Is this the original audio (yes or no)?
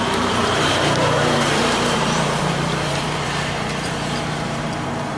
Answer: no